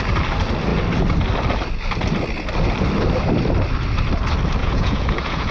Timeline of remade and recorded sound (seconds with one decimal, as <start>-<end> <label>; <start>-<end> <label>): 0.0-4.6 recorded; 4.6-5.5 remade